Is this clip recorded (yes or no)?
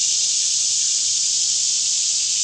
no